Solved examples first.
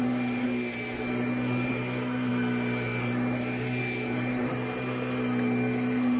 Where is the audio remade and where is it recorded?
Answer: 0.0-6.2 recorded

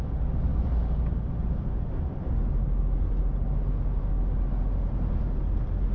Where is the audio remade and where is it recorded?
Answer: 0.0-5.9 recorded